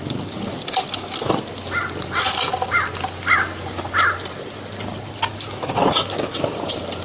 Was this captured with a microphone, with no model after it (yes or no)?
yes